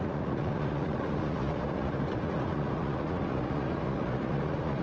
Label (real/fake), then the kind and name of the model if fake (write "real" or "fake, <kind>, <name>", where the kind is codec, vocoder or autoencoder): fake, vocoder, Vocos